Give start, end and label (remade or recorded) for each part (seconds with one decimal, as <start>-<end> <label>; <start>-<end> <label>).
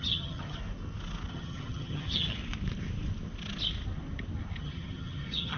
0.0-0.6 remade; 0.6-1.3 recorded; 1.3-2.4 remade; 2.4-4.6 recorded; 4.6-5.6 remade